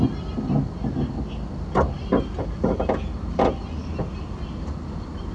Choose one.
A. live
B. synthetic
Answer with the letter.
A